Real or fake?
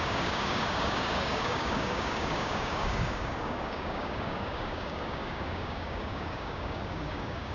fake